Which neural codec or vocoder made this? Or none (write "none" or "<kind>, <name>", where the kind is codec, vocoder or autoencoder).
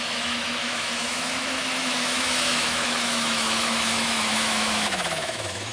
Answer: autoencoder, DAC-VAE